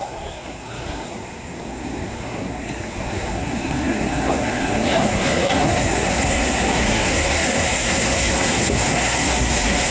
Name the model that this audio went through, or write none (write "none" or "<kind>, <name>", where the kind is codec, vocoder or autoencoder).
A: codec, SNAC